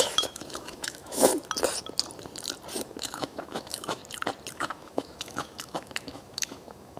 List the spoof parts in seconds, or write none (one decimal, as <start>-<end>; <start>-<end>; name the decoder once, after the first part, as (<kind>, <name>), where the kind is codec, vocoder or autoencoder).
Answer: 0.0-1.3 (autoencoder, DAC-VAE); 2.8-4.0; 4.5-7.0